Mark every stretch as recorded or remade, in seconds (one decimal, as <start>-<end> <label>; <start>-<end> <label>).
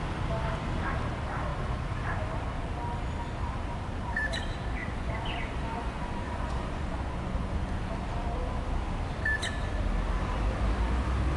0.0-4.8 recorded; 4.8-7.9 remade; 7.9-11.4 recorded